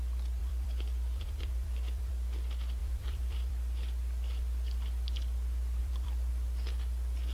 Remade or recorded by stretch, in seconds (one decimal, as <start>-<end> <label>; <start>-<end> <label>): 0.0-0.4 recorded; 0.4-2.1 remade; 2.1-2.8 recorded; 2.8-3.5 remade; 3.5-5.8 recorded; 5.8-6.3 remade; 6.3-7.3 recorded